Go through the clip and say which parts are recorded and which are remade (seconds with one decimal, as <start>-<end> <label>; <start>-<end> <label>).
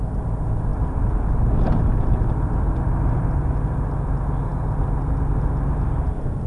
0.0-6.5 recorded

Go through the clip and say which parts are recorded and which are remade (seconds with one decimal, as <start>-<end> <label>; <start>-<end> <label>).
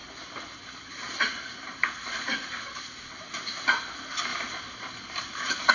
0.0-0.8 recorded; 0.8-5.7 remade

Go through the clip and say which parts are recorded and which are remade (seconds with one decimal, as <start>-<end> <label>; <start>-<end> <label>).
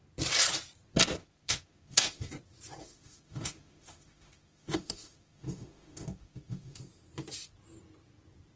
0.0-1.2 recorded; 1.2-2.3 remade; 2.3-2.8 recorded; 2.8-6.8 remade; 6.8-8.6 recorded